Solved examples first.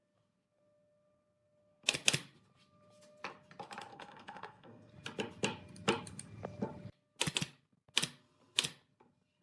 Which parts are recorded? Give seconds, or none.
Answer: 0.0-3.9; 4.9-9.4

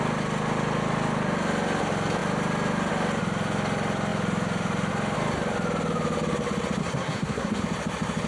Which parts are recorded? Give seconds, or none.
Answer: 0.0-6.8; 7.6-8.3

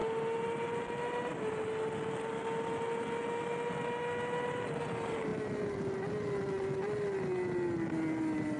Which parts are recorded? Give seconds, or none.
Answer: 0.0-8.6

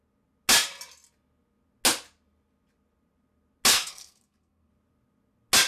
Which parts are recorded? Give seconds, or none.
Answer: 0.0-3.7; 4.7-5.7

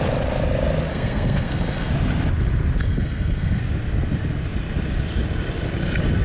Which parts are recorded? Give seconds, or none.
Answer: 0.0-0.9; 1.9-2.8; 3.6-6.2

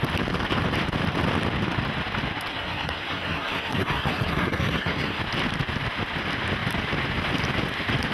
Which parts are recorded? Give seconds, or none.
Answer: 0.0-2.5; 5.2-8.1